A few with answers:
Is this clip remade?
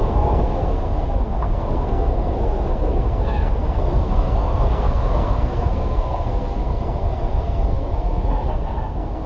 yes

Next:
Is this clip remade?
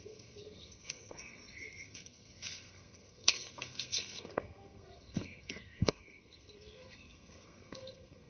yes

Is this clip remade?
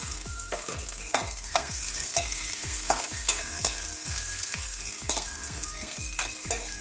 yes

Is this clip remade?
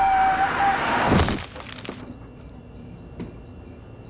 no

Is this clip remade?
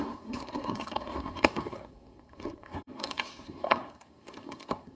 yes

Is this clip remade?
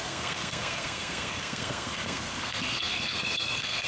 yes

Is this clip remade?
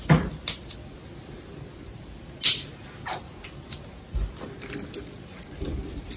no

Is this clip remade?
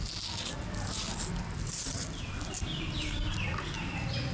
no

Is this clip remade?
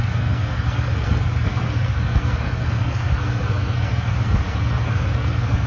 yes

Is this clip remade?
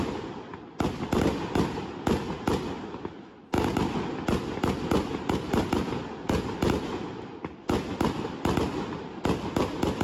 no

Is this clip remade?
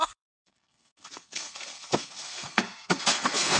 yes